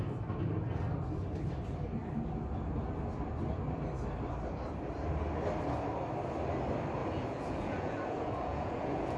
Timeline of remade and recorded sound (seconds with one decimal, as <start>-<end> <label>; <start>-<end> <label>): 0.0-7.0 recorded; 7.0-9.2 remade